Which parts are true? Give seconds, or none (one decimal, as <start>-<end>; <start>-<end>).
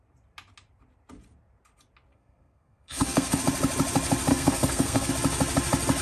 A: 0.0-2.1; 3.4-4.3; 5.1-6.0